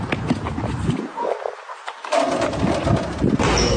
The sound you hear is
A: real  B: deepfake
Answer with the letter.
A